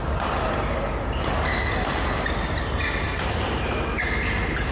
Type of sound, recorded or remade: recorded